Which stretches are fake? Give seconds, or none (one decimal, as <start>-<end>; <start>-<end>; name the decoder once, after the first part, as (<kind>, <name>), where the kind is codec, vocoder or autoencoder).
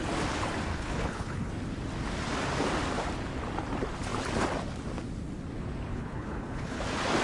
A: 0.7-1.5 (codec, HILCodec); 5.9-6.8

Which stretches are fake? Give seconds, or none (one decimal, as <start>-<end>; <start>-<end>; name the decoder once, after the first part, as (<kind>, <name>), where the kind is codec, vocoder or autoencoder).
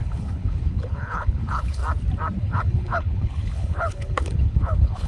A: 0.0-1.8 (codec, HILCodec); 2.4-5.1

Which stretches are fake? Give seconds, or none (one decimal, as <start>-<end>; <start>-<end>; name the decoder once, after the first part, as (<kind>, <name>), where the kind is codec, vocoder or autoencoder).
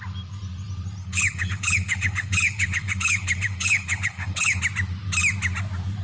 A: 1.0-4.6 (codec, HILCodec)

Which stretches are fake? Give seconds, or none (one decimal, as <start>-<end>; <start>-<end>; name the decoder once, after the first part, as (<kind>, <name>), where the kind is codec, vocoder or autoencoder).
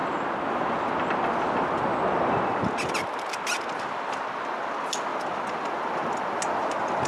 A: none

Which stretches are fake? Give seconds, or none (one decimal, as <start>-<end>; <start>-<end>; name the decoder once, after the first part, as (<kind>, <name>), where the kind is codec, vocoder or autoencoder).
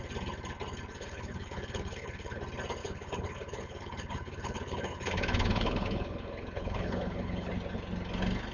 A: 0.9-2.4 (codec, HILCodec); 2.8-7.5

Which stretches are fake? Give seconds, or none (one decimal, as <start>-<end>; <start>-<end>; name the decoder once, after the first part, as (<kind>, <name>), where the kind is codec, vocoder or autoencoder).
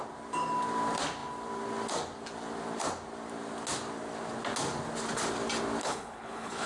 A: 5.8-6.7 (codec, HILCodec)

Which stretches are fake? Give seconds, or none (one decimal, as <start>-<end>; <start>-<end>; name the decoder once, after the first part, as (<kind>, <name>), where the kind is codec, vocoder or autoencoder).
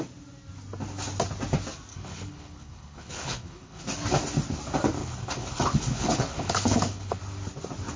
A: 1.9-3.8 (codec, HILCodec); 5.0-7.2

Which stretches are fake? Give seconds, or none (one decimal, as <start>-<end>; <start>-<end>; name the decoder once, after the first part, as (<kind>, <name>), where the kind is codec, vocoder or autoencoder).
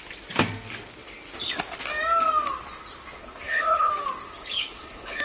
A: 3.2-3.9 (codec, HILCodec); 4.4-5.2